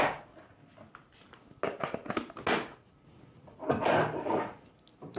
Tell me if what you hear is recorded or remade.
recorded